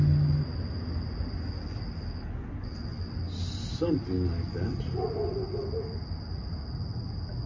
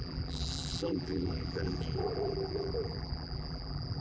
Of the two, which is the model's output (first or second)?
second